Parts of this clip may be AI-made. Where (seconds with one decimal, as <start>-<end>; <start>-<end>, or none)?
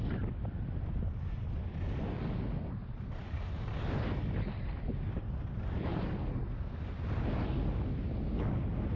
2.8-3.7; 5.9-6.4